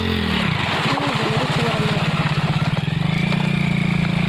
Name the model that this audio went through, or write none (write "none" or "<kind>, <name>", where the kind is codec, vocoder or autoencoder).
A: none